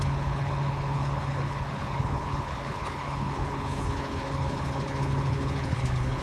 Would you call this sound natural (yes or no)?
no